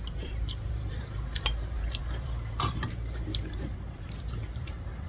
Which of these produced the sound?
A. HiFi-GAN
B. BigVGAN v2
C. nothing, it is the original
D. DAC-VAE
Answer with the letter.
B